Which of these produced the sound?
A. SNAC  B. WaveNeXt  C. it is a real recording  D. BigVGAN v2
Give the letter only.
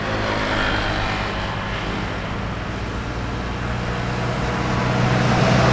C